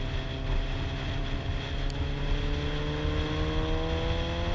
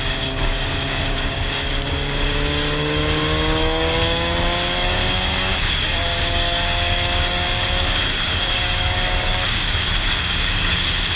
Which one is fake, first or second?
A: second